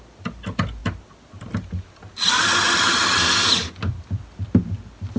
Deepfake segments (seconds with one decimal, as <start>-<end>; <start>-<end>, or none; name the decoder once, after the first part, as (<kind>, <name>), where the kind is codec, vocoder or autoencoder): none